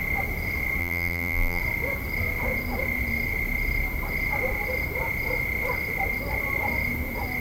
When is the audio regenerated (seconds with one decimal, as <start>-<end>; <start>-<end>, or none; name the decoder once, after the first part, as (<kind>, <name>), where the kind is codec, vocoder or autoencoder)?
0.8-1.6 (vocoder, BigVGAN v2)